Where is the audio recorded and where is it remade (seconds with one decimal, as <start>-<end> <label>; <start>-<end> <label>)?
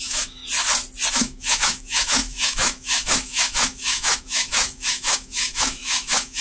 0.0-0.4 remade; 0.4-1.1 recorded; 1.1-6.4 remade